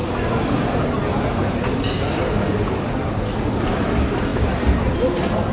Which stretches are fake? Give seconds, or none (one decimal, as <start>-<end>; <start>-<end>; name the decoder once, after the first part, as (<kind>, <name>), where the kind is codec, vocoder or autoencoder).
none